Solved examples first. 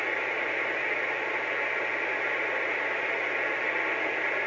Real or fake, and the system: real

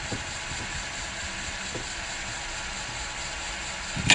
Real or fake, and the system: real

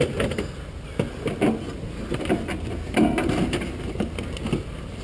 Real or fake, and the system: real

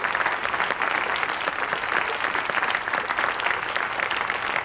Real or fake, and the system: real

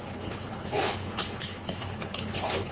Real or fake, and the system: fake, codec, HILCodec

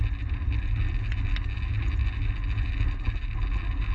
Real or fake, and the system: real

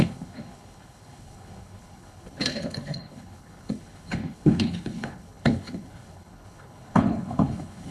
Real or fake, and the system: fake, codec, HILCodec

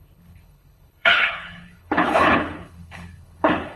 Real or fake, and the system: fake, codec, HILCodec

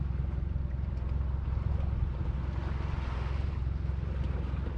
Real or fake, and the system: real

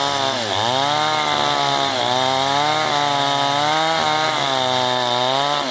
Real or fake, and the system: real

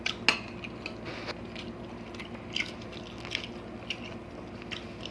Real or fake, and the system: real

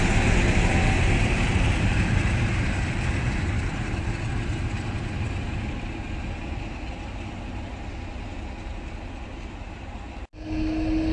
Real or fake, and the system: real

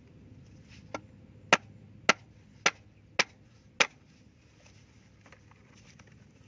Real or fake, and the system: real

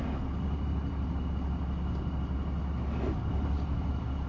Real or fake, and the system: real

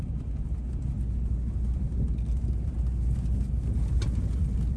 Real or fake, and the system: real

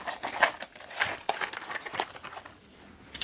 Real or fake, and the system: real